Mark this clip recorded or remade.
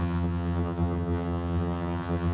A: remade